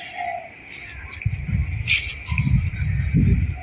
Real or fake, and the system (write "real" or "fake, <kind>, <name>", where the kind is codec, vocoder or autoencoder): real